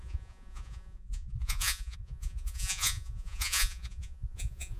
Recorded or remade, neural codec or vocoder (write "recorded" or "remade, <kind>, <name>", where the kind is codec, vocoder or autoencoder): remade, vocoder, Vocos